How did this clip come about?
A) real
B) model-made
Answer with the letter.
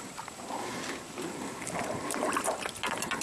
A